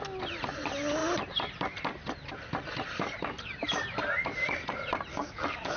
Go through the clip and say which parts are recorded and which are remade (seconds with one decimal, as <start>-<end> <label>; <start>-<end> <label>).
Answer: 0.0-5.1 recorded; 5.1-5.8 remade